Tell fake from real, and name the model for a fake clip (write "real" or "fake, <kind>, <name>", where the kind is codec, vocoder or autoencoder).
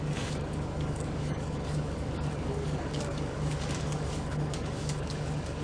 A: fake, codec, DAC